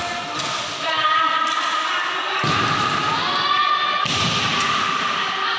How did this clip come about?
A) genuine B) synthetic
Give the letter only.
A